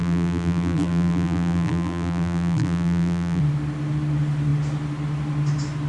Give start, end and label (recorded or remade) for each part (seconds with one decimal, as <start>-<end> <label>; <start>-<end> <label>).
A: 0.0-3.4 remade; 3.4-5.9 recorded